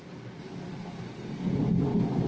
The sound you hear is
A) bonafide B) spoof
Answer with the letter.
A